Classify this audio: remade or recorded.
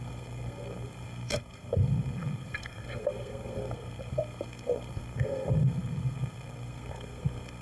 remade